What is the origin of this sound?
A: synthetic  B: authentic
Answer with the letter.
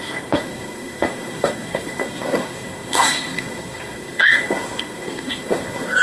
A